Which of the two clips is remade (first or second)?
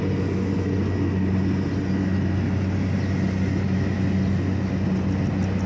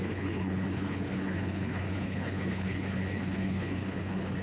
second